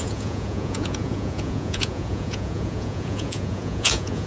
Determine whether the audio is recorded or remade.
remade